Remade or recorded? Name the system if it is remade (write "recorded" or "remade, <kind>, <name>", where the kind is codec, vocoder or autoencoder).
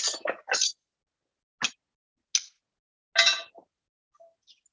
recorded